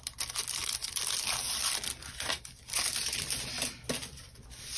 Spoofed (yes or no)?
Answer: no